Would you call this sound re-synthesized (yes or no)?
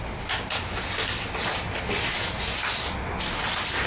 no